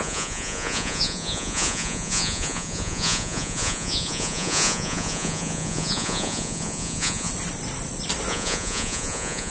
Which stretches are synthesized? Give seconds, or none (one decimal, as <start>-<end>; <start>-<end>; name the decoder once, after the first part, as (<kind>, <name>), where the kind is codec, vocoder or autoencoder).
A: 0.0-7.3 (vocoder, Vocos); 8.3-9.5